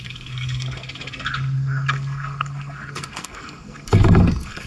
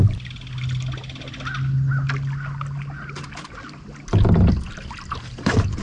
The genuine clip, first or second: second